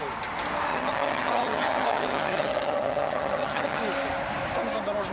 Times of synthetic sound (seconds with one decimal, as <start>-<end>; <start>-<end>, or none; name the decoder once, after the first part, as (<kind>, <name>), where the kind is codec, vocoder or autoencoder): 0.7-3.8 (vocoder, HiFi-GAN)